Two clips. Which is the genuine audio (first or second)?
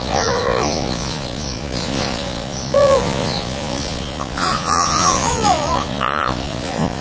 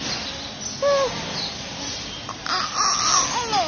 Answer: second